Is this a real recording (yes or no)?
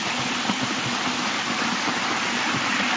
yes